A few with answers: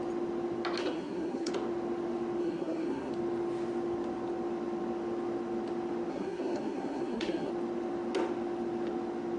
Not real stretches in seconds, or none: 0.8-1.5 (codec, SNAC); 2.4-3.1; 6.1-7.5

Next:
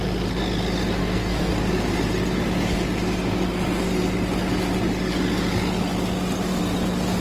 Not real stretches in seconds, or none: 1.0-1.5 (codec, SNAC)